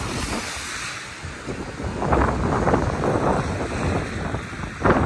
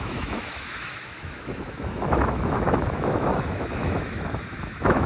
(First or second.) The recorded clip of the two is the first